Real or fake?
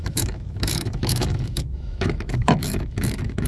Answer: fake